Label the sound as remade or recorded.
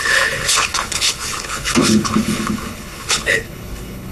remade